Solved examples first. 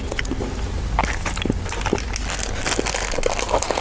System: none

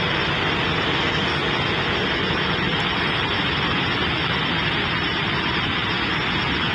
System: none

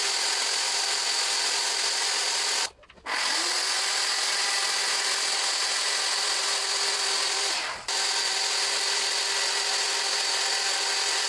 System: none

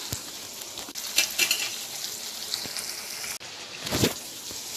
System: none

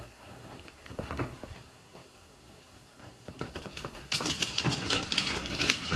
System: codec, SNAC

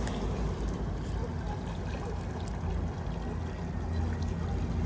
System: none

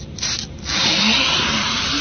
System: none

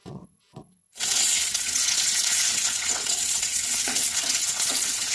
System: vocoder, WaveNeXt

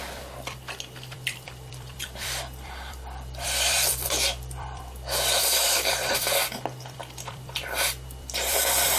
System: vocoder, BigVGAN v2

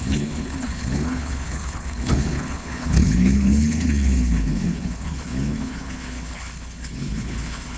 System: codec, HILCodec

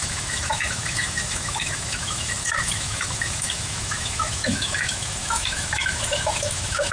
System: autoencoder, DAC-VAE